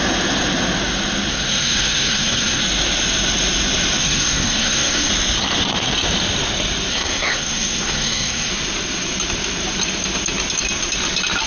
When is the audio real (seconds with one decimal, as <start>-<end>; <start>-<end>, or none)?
0.0-1.3; 2.6-4.0; 5.1-6.9; 8.5-11.5